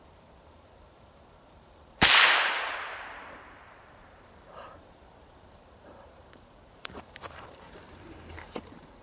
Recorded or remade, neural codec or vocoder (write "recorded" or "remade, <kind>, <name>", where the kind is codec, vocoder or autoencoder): remade, vocoder, BigVGAN v2